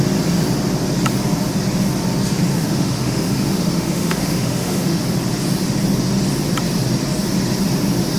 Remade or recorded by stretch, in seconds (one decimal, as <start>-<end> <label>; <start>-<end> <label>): 0.0-2.5 recorded; 2.5-5.0 remade; 5.0-8.2 recorded